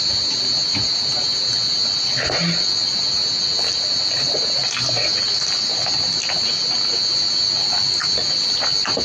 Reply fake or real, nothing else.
real